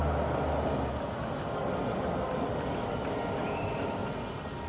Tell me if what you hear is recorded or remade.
recorded